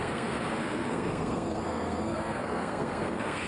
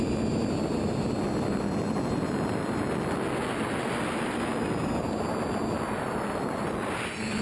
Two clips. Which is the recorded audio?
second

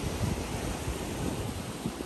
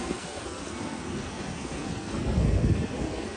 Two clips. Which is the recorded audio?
first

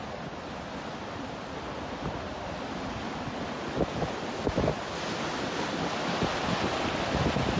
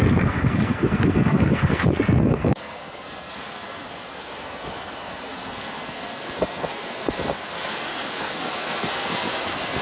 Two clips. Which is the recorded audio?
first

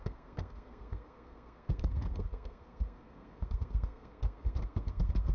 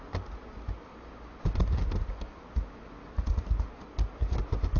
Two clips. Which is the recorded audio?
second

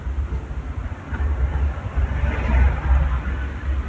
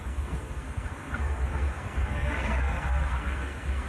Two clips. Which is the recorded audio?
first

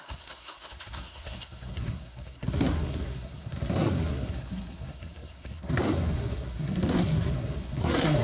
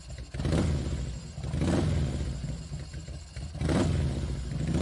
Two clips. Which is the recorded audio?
second